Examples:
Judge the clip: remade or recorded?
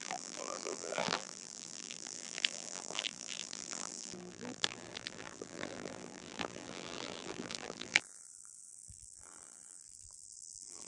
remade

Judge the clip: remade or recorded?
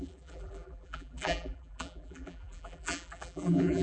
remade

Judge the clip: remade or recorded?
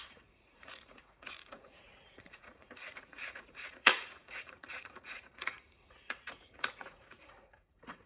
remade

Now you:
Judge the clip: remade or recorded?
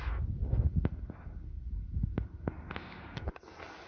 recorded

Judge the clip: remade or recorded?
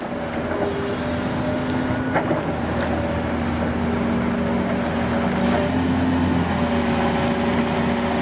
recorded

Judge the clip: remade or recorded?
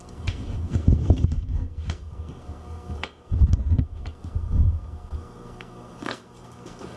remade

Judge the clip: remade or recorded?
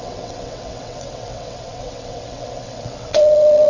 remade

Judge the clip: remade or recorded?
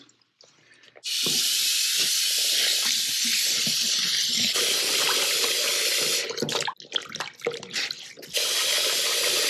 recorded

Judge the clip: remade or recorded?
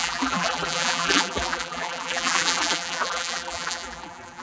remade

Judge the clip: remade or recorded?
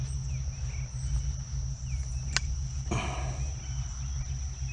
recorded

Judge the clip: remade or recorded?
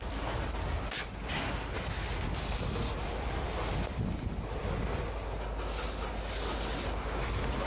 recorded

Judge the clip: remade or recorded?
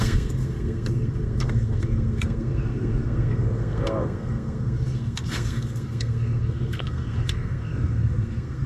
remade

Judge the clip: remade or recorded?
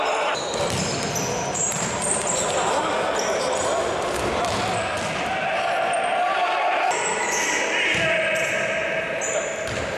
recorded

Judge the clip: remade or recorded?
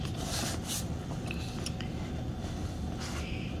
recorded